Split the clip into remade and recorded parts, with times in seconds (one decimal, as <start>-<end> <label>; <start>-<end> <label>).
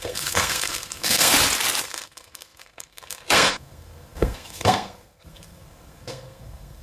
0.0-1.3 remade; 1.3-1.8 recorded; 1.8-6.8 remade